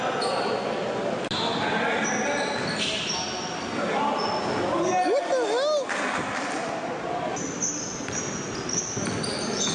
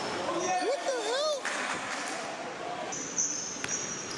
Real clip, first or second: first